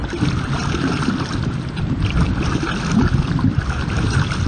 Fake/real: real